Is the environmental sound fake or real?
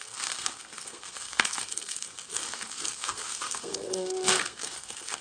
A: fake